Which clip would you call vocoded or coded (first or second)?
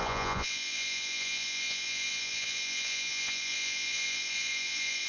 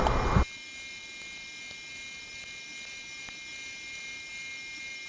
first